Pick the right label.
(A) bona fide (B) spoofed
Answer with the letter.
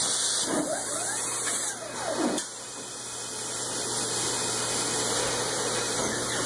A